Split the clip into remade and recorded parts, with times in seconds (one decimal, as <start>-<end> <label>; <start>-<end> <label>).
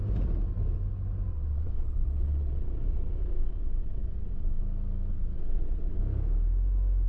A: 0.0-1.3 recorded; 1.3-4.6 remade; 4.6-5.1 recorded; 5.1-6.0 remade; 6.0-7.1 recorded